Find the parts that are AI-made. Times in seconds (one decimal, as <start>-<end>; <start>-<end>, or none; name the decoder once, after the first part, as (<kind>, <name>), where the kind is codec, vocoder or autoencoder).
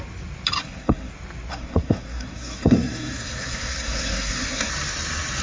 0.6-1.1 (codec, SNAC); 1.5-4.7